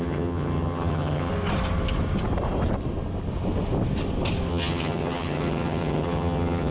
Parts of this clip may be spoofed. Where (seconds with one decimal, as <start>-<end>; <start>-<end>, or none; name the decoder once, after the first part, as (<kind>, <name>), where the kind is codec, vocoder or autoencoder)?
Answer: 0.0-1.3 (vocoder, HiFi-GAN); 4.5-6.7